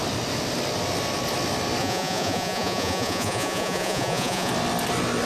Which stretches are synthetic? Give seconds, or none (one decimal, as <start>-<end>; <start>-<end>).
1.8-4.5